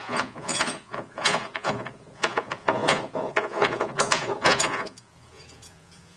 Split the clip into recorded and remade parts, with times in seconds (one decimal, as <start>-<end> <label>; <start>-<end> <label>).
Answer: 0.0-6.2 remade